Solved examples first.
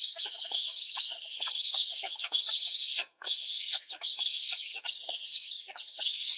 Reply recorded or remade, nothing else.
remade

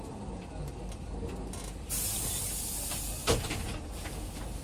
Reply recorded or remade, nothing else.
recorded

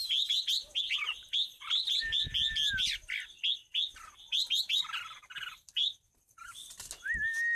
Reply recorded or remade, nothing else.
recorded